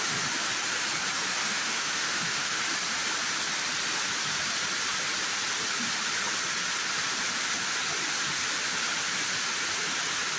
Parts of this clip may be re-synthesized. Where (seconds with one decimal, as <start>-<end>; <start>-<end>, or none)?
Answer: 1.4-2.6

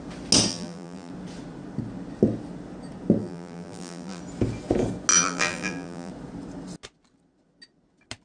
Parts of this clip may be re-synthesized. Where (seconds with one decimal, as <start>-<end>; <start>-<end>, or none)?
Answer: 0.5-1.1; 3.2-4.2; 5.1-6.1

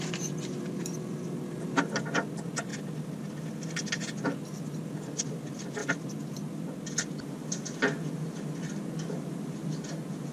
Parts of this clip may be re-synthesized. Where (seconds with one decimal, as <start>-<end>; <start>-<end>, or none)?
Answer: none

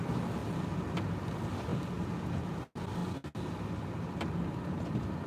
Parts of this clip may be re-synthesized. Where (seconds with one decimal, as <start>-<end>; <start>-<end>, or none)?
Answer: none

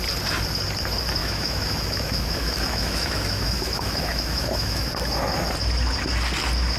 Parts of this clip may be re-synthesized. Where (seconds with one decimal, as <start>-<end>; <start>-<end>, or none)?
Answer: 1.2-4.9